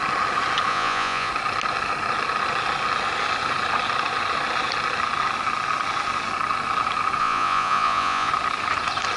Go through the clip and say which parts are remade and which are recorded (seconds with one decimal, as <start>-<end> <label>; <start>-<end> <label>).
0.0-0.7 recorded; 0.7-1.3 remade; 1.3-7.2 recorded; 7.2-8.3 remade; 8.3-9.2 recorded